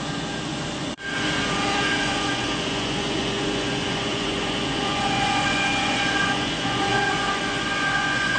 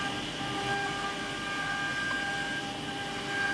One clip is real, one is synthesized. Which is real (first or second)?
second